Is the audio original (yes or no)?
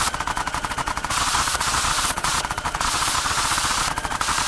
no